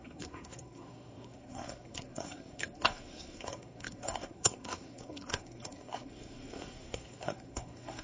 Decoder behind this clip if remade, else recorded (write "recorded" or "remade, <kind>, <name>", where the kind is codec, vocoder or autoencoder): remade, codec, SNAC